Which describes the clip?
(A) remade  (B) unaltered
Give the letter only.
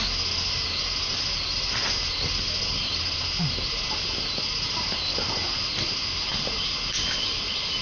B